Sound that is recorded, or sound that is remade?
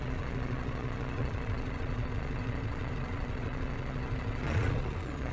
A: remade